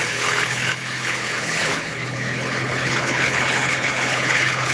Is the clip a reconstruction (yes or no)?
yes